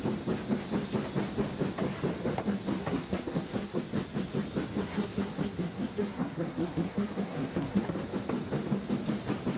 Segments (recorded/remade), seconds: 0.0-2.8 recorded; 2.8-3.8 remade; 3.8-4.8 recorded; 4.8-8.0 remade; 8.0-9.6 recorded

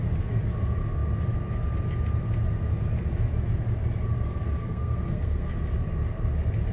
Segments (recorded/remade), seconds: 0.0-4.6 recorded; 4.6-5.5 remade; 5.5-6.7 recorded

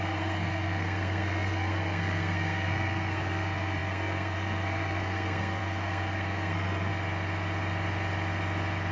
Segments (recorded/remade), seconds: 0.0-6.9 remade; 6.9-8.9 recorded

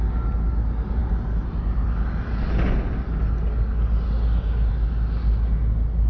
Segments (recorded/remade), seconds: 0.0-6.1 recorded

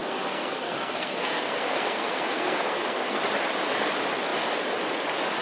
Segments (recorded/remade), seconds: 0.0-3.2 remade; 3.2-5.4 recorded

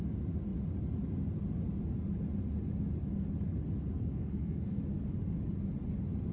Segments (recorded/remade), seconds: 0.0-3.9 recorded; 3.9-4.8 remade; 4.8-6.3 recorded

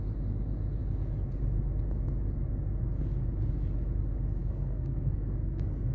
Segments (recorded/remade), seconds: 0.0-4.4 recorded; 4.4-5.9 remade

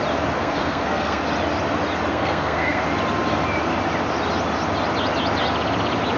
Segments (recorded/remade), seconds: 0.0-0.4 recorded; 0.4-1.2 remade; 1.2-2.1 recorded; 2.1-2.8 remade; 2.8-6.2 recorded